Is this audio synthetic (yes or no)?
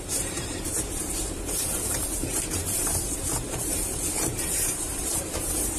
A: yes